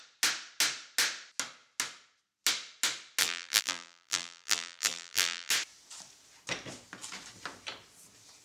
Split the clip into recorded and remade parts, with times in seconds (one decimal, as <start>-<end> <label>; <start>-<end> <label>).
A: 0.0-3.2 recorded; 3.2-5.5 remade; 5.5-8.4 recorded